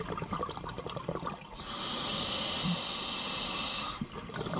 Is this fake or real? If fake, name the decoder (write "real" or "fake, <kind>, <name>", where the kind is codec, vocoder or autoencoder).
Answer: real